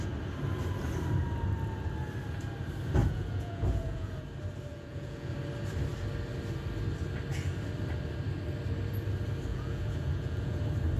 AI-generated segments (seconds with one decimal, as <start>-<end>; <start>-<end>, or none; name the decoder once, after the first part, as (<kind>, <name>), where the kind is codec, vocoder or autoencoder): 3.0-4.2 (vocoder, Vocos); 4.7-5.3; 9.5-10.6